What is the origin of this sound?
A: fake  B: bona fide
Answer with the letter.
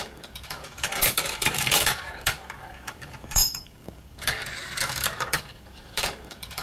A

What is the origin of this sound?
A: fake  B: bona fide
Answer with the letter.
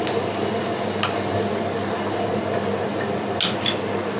B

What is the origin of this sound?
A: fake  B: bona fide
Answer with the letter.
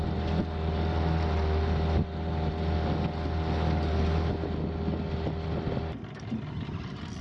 B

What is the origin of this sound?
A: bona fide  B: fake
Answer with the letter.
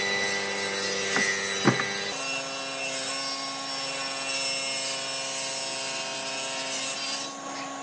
A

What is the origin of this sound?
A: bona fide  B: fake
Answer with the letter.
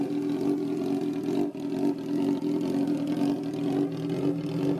A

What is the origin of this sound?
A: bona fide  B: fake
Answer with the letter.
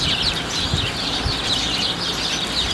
A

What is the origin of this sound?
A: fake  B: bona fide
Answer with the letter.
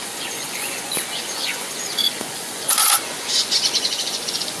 A